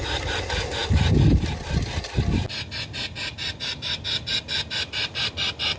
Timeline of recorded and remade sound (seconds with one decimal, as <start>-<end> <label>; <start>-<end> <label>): 0.0-5.8 recorded